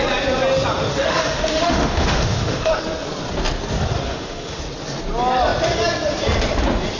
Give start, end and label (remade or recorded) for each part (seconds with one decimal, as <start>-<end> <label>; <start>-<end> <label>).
0.0-0.9 recorded; 0.9-2.7 remade; 2.7-4.1 recorded; 4.1-4.6 remade; 4.6-7.0 recorded